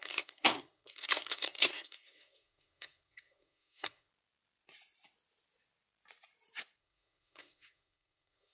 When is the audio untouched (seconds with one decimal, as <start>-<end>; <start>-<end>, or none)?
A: 4.1-6.8